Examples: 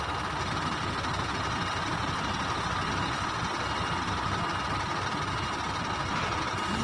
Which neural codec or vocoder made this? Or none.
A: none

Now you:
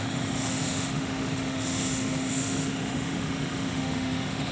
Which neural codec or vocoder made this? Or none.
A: autoencoder, DAC-VAE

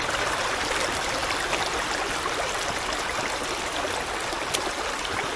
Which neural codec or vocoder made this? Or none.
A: none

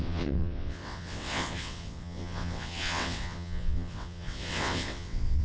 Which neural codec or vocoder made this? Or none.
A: vocoder, WaveNeXt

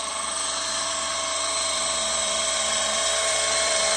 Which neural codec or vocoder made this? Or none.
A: vocoder, BigVGAN v2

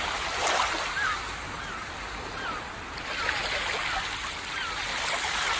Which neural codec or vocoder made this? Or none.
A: none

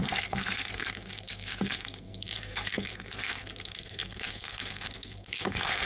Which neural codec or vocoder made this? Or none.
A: codec, SNAC